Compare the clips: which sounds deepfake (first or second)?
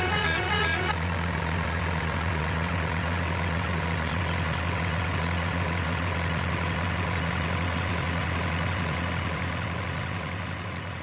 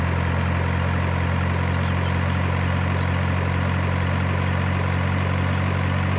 first